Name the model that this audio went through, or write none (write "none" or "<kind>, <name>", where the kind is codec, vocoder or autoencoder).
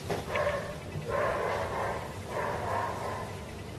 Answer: vocoder, BigVGAN v2